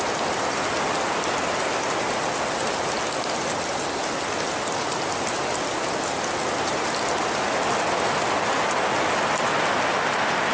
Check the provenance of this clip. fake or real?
real